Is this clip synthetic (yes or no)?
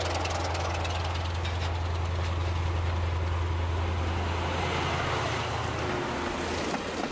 no